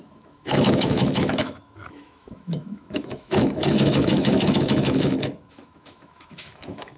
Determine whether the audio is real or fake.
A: fake